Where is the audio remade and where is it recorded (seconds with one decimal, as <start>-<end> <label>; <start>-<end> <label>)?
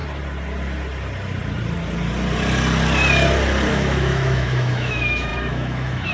0.0-3.7 recorded; 3.7-6.1 remade